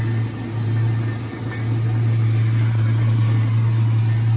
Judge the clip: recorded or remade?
recorded